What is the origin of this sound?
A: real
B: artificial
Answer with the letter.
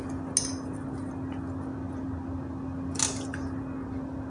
A